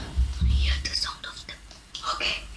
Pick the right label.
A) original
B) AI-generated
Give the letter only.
A